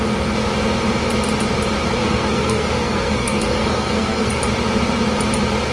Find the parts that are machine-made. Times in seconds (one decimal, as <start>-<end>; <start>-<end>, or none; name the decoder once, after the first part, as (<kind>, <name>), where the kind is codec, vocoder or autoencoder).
2.0-4.4 (codec, SNAC)